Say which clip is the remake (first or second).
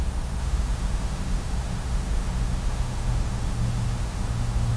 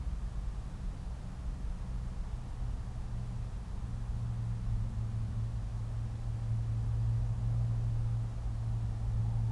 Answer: first